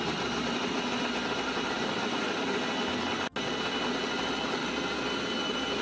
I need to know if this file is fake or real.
real